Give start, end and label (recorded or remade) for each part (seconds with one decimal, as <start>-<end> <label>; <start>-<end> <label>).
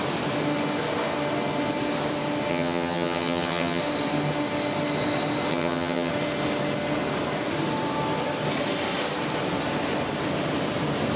0.0-2.5 recorded; 2.5-3.8 remade; 3.8-5.5 recorded; 5.5-6.1 remade; 6.1-11.2 recorded